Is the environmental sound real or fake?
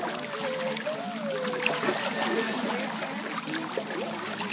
real